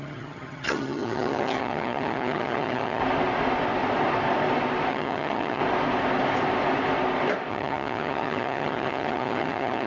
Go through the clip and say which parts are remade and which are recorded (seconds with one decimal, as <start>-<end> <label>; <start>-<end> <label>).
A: 0.0-3.0 remade; 3.0-4.9 recorded; 4.9-5.6 remade; 5.6-7.5 recorded; 7.5-9.9 remade